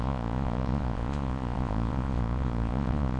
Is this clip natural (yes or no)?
no